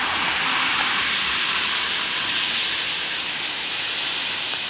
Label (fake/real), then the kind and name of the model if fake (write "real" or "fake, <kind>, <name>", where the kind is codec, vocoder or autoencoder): real